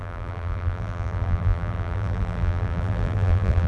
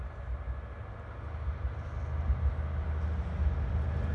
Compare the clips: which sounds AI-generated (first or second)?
first